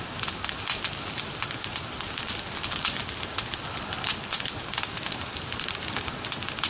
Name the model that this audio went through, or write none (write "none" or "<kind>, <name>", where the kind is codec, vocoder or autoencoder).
none